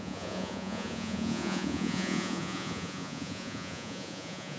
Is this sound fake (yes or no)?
yes